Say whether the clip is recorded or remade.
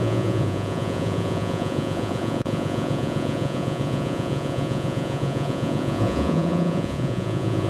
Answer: remade